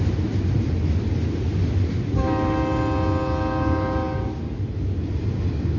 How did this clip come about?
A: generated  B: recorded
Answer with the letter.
B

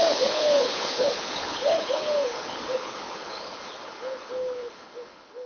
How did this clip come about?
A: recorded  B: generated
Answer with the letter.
B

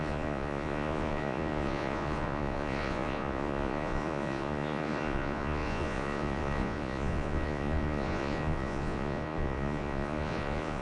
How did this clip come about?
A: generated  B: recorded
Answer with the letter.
A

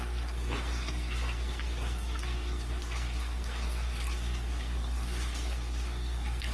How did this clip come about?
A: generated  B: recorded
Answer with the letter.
A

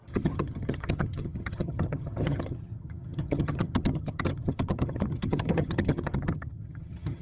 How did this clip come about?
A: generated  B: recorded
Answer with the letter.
A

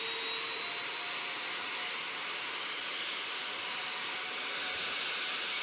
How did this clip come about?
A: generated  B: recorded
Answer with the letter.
B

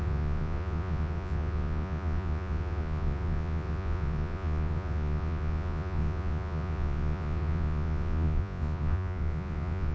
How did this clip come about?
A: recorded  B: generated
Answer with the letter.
B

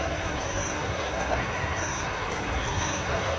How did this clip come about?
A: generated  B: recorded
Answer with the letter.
A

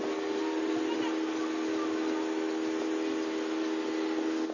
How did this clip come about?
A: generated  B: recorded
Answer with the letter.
B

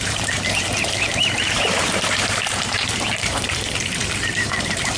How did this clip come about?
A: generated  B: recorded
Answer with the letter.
A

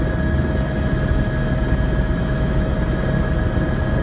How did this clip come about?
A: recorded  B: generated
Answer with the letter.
A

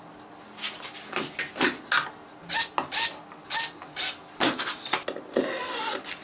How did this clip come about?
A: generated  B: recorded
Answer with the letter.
B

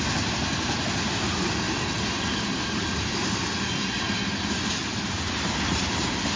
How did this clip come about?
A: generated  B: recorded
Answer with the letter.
B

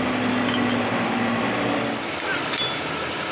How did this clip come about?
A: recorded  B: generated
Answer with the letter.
A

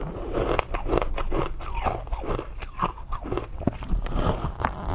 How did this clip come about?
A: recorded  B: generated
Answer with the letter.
A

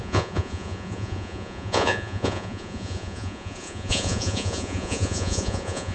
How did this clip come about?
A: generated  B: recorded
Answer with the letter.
A